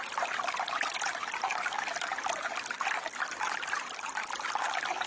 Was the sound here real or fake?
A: real